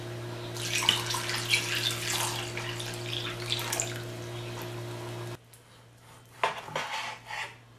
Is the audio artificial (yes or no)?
no